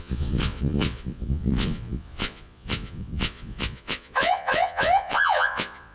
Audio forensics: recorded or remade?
remade